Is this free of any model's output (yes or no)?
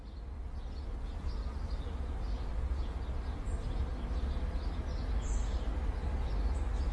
yes